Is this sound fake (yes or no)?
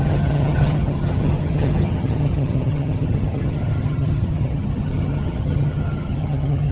yes